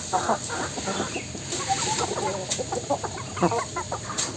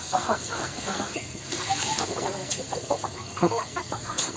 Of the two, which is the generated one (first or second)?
second